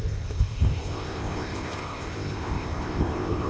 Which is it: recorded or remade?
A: remade